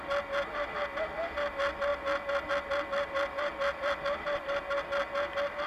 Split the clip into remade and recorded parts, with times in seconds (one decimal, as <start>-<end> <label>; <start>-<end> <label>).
0.0-3.5 recorded; 3.5-4.6 remade; 4.6-5.7 recorded